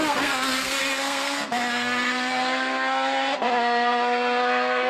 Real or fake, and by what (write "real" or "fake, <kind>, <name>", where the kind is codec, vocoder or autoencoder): fake, codec, SNAC